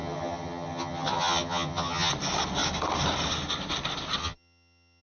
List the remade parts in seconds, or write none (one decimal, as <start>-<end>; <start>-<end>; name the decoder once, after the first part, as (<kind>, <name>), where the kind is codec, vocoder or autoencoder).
0.0-2.1 (vocoder, HiFi-GAN); 4.2-5.0